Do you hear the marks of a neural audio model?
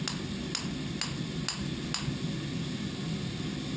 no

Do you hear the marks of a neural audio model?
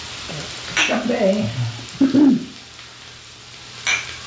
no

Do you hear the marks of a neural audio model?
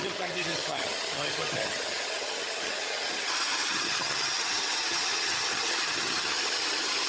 yes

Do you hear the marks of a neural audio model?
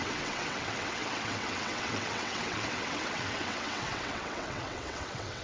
yes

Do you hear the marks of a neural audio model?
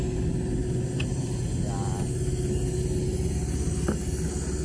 no